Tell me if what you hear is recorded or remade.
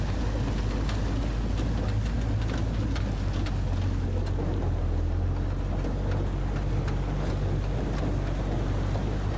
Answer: recorded